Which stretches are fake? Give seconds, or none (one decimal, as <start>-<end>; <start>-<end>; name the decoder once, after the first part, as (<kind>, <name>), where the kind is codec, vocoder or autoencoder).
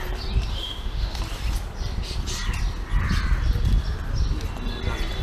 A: 0.5-1.2 (autoencoder, DAC-VAE)